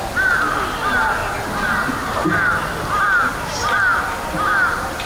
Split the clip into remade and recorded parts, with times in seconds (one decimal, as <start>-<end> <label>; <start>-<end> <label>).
0.0-5.1 recorded